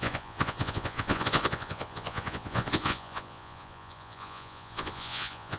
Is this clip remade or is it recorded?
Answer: remade